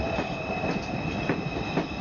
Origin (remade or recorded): recorded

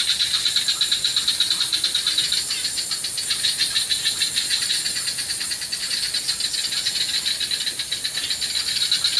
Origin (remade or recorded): recorded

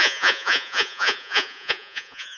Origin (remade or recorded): remade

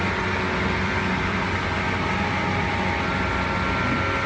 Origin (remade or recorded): recorded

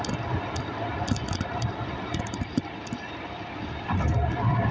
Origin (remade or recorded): recorded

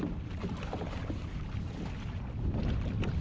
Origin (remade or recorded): recorded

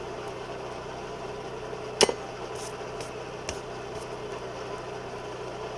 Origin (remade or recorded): recorded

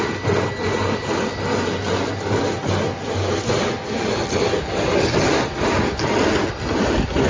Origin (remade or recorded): recorded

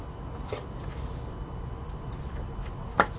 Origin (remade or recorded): recorded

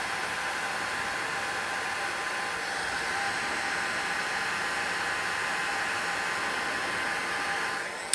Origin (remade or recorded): recorded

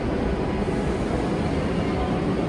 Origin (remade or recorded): remade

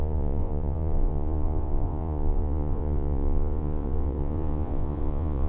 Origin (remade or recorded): remade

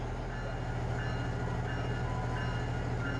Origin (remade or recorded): recorded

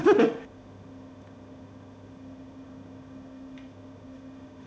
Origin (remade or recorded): remade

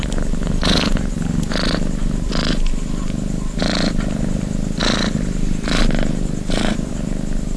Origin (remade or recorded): recorded